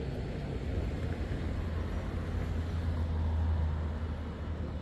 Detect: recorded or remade recorded